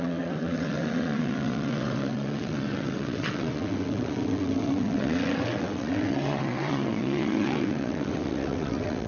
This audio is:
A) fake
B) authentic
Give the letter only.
A